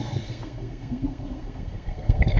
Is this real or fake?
fake